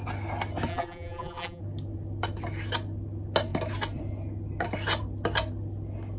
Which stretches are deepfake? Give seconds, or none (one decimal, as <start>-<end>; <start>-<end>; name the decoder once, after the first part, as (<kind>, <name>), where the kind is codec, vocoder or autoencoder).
0.7-1.6 (vocoder, BigVGAN v2)